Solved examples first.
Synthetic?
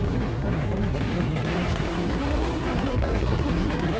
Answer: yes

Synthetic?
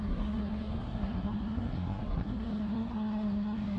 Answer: yes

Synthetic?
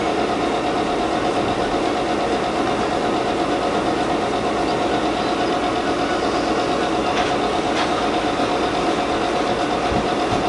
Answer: no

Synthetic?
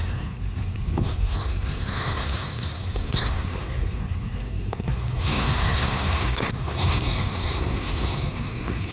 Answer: yes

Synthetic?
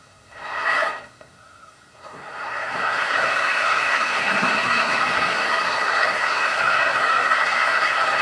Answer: yes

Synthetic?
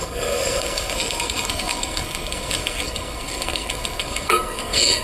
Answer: yes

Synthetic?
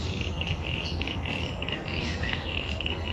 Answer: yes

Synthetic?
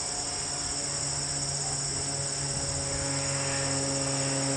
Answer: no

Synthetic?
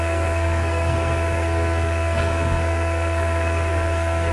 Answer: yes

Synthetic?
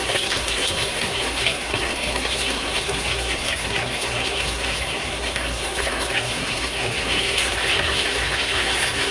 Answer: yes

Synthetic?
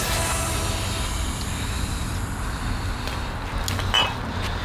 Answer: no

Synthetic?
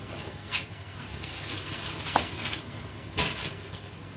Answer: yes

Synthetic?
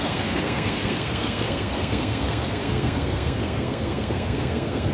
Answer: yes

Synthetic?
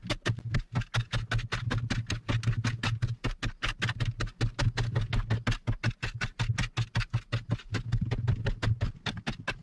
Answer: no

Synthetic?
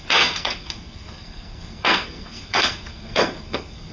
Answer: yes